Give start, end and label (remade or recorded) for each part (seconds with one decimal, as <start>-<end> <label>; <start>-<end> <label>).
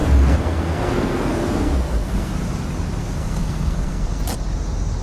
0.0-2.3 remade; 2.3-3.0 recorded; 3.0-4.2 remade; 4.2-5.0 recorded